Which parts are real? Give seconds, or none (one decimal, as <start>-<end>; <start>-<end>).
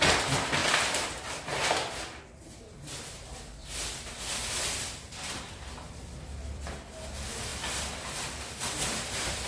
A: 0.0-3.6; 6.7-7.5